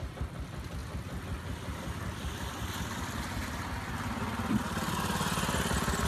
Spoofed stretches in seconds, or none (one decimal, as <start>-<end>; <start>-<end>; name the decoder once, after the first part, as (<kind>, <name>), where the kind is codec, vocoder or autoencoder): none